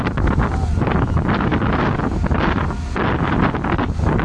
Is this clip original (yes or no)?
yes